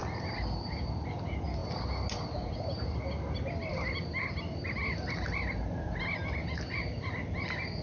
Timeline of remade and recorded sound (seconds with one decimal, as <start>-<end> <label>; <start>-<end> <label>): 0.0-7.8 recorded